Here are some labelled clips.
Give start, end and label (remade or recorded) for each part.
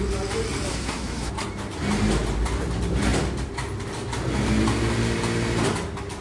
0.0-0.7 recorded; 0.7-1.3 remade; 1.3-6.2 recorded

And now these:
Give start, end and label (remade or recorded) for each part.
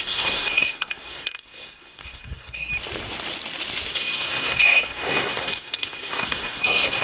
0.0-2.7 remade; 2.7-3.9 recorded; 3.9-7.0 remade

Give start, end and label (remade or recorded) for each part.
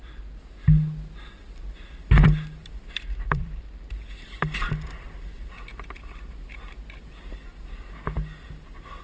0.0-2.6 recorded; 2.6-3.6 remade; 3.6-9.0 recorded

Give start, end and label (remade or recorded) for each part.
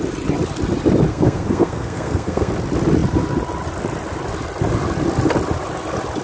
0.0-1.1 recorded; 1.1-2.5 remade; 2.5-6.2 recorded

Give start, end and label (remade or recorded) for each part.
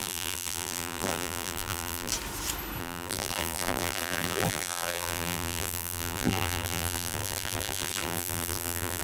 0.0-2.1 remade; 2.1-2.8 recorded; 2.8-9.0 remade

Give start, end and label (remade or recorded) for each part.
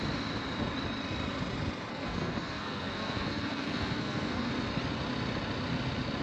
0.0-1.9 recorded; 1.9-4.5 remade; 4.5-6.2 recorded